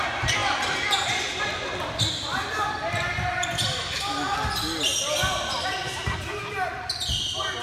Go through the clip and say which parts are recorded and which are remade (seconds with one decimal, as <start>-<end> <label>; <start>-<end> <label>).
0.0-7.6 recorded